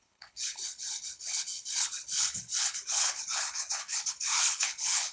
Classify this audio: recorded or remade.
remade